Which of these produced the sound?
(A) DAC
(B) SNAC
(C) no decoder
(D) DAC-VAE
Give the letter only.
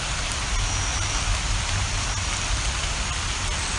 C